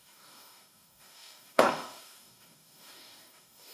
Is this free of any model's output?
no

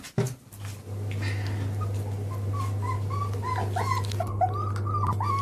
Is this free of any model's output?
yes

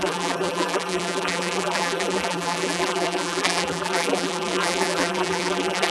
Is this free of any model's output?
no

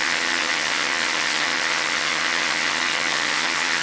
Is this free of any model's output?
no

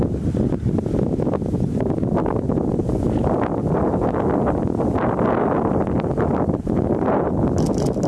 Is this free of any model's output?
yes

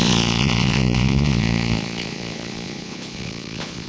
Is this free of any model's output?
no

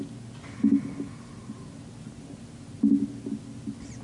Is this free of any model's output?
yes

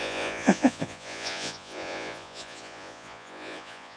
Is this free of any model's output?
no